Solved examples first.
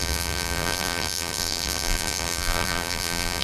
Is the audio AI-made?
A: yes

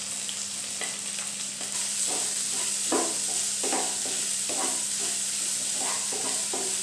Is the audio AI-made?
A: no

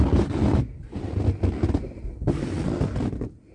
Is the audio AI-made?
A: no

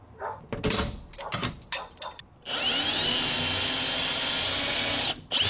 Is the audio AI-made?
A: no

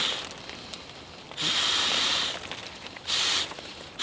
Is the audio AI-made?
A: no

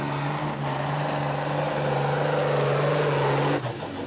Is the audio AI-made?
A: no